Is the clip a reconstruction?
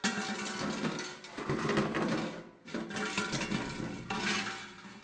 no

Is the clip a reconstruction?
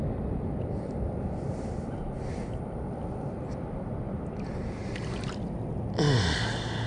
no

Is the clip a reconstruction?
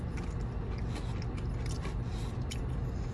no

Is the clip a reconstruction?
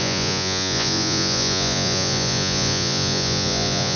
yes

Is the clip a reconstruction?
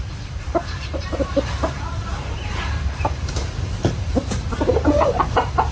yes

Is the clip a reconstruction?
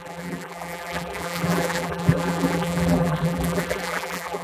yes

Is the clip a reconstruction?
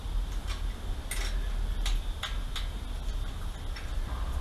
no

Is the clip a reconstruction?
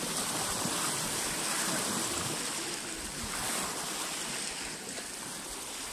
no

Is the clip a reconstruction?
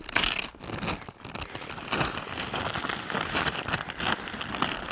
no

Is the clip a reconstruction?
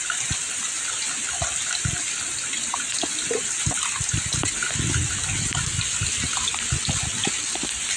no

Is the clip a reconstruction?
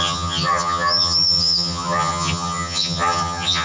yes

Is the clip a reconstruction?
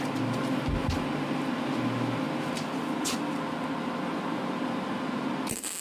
no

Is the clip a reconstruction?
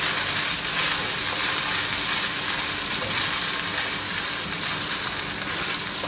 no